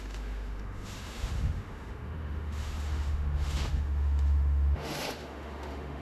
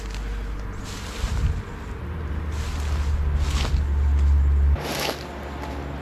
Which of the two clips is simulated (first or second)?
first